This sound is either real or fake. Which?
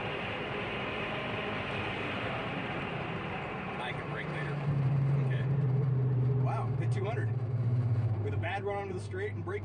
fake